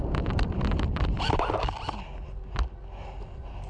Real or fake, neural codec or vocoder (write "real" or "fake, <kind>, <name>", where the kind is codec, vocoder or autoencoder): real